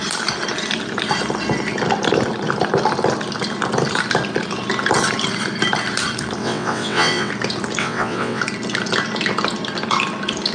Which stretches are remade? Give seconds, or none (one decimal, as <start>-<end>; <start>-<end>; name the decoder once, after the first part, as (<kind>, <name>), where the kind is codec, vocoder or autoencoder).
6.4-7.3 (vocoder, WaveNeXt); 7.8-8.4